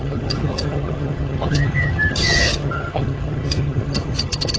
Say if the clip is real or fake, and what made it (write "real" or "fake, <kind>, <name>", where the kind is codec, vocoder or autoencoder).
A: fake, vocoder, HiFi-GAN